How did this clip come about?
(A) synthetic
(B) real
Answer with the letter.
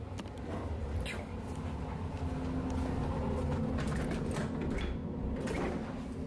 B